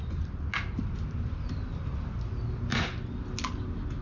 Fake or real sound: real